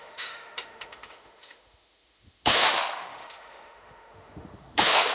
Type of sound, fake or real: fake